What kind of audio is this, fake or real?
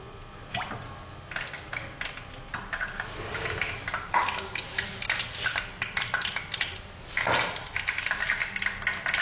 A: real